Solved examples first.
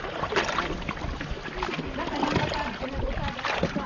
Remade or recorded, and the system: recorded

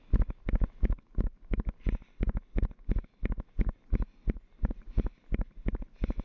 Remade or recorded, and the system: recorded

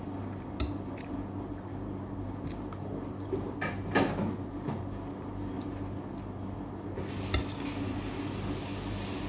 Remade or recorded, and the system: recorded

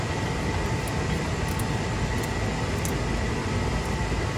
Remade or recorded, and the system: recorded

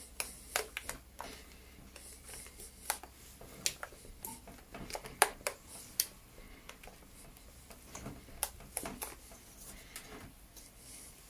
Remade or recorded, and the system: recorded